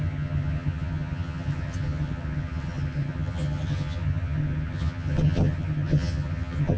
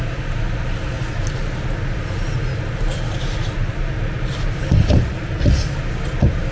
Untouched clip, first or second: second